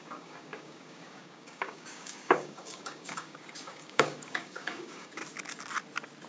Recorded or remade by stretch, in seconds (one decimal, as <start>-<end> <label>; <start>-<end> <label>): 0.0-5.2 remade; 5.2-6.3 recorded